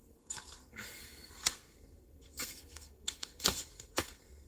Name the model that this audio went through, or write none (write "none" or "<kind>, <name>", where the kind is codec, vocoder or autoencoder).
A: codec, SNAC